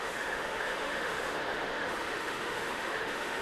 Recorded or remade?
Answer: remade